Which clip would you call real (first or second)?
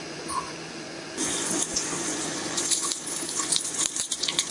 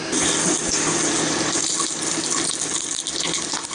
second